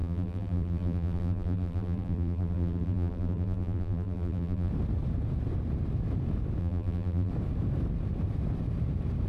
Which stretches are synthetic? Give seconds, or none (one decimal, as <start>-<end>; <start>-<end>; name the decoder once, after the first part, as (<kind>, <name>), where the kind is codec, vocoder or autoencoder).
0.0-4.7 (vocoder, BigVGAN v2); 6.6-7.3

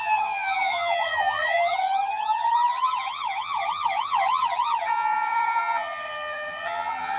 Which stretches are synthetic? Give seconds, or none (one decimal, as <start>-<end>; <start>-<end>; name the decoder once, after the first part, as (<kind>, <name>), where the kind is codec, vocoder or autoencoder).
0.0-7.2 (vocoder, HiFi-GAN)